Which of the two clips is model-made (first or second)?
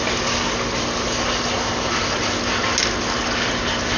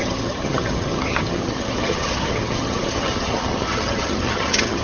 second